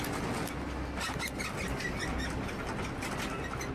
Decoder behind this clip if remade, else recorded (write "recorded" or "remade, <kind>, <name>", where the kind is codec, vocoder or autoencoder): recorded